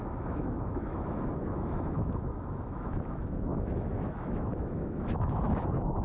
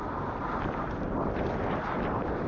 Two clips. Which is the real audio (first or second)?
second